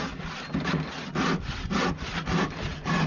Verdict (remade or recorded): recorded